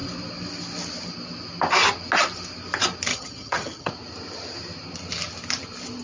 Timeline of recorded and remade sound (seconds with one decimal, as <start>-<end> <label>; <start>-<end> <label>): 0.0-3.1 recorded; 3.1-3.9 remade; 3.9-6.0 recorded